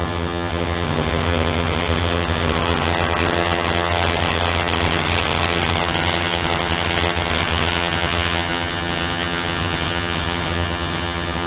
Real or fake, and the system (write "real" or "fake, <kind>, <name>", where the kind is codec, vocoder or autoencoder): fake, vocoder, HiFi-GAN